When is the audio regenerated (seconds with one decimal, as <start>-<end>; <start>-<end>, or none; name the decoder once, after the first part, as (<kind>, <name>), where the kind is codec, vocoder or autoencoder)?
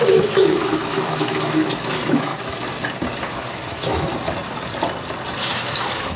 0.0-2.3 (autoencoder, DAC-VAE); 3.3-4.1; 5.5-6.2